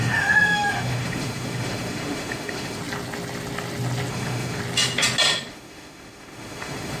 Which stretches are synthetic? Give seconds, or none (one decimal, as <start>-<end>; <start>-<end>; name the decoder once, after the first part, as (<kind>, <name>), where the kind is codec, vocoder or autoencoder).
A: 0.0-2.8 (autoencoder, DAC-VAE); 4.1-4.6; 5.5-7.0